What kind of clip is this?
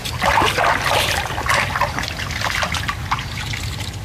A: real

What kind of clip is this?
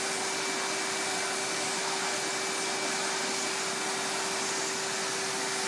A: real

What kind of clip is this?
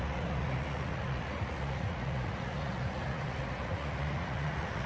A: fake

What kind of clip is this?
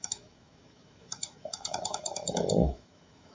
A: fake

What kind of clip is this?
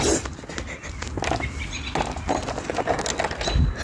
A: real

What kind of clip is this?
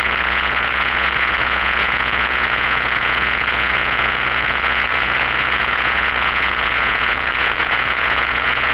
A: fake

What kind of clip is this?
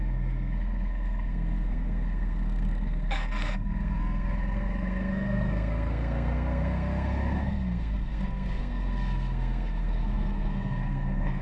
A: fake